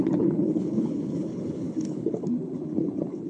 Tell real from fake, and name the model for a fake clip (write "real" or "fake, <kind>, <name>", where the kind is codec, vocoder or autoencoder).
fake, codec, HILCodec